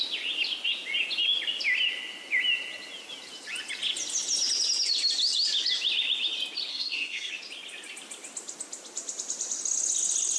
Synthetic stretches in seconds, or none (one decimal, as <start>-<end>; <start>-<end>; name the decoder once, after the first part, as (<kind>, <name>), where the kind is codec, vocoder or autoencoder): 6.7-7.3 (codec, SNAC)